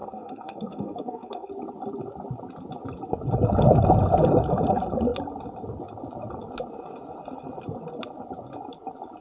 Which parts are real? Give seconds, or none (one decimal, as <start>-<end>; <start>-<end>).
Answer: 1.5-9.2

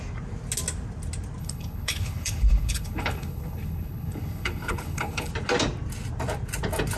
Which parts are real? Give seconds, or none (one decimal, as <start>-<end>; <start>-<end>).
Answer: 0.0-1.4; 5.3-7.0

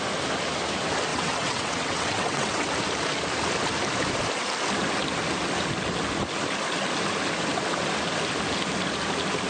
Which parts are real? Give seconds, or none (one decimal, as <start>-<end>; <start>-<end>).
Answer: 0.0-1.1; 2.7-9.5

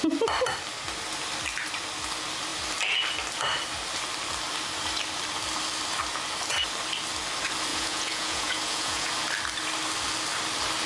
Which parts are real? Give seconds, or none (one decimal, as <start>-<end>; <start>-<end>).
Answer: 0.0-7.7; 9.1-10.9

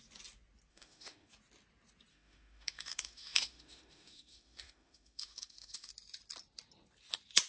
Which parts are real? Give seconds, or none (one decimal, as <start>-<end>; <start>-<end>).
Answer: 0.0-0.7; 1.3-2.1; 5.9-7.5

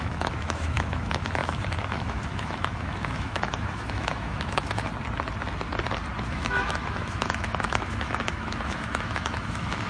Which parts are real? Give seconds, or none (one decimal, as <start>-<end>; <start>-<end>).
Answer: 4.9-6.2

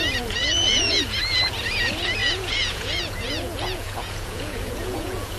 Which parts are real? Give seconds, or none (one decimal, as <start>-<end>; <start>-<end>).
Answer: none

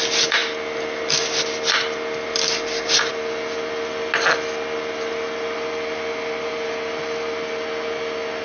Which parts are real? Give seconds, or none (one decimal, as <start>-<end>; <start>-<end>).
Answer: 0.0-8.4